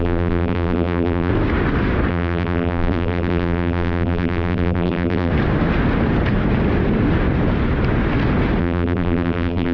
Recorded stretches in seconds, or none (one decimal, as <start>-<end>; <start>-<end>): 1.3-2.1; 5.3-8.6